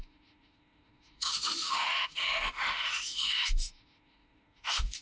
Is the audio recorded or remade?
remade